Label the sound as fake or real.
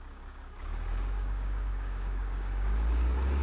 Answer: fake